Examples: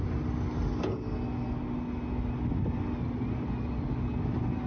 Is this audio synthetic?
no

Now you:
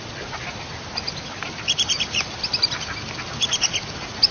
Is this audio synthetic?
no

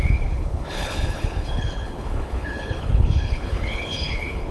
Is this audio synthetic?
yes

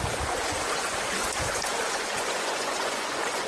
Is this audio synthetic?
yes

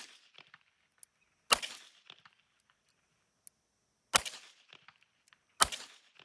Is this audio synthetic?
no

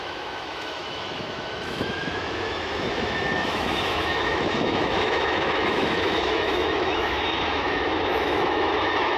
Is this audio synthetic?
yes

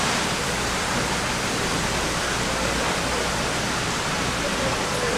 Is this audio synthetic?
no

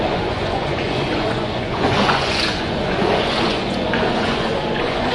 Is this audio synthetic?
yes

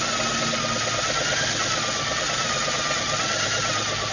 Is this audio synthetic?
no